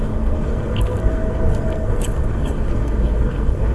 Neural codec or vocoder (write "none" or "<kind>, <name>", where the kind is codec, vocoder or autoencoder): codec, SNAC